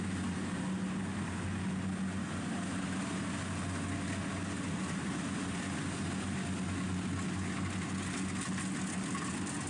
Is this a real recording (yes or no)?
yes